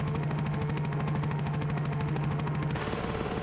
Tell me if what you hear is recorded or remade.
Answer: remade